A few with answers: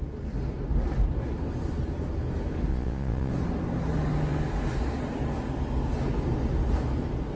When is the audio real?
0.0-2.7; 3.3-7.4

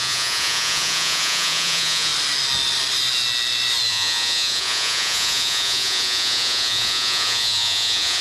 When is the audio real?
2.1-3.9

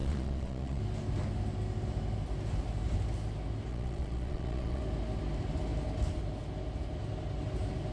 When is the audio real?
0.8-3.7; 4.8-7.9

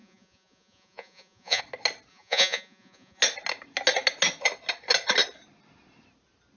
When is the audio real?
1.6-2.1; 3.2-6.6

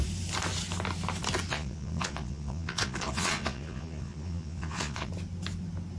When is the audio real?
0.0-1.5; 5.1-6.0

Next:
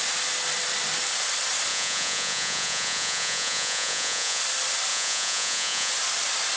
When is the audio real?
0.0-1.7; 4.4-4.9; 5.9-6.6

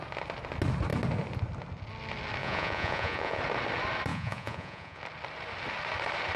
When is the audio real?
0.0-2.4; 3.4-4.1; 5.0-6.4